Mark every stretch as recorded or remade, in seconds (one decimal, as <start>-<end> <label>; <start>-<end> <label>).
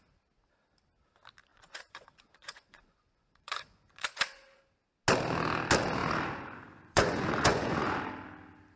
0.0-1.5 recorded; 1.5-4.6 remade; 4.6-6.0 recorded; 6.0-8.1 remade; 8.1-8.8 recorded